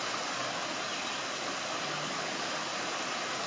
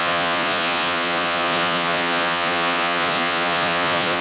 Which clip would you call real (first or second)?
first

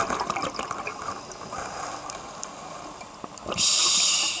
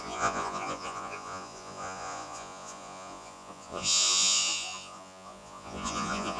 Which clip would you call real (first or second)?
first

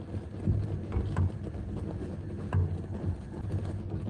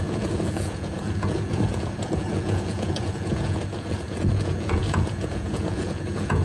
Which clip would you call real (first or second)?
first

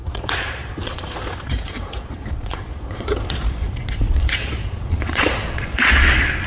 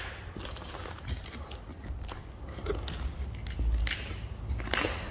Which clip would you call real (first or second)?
second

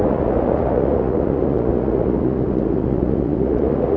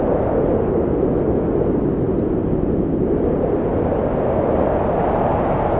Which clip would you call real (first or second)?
second